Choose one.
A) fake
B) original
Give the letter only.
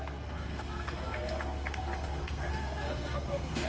A